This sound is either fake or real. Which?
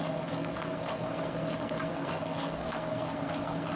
fake